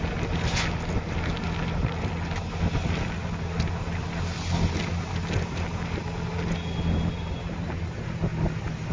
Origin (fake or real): real